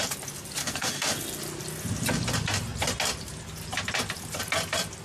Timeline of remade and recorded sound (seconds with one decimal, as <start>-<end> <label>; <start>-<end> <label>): 0.0-0.6 recorded; 0.6-1.1 remade; 1.1-5.0 recorded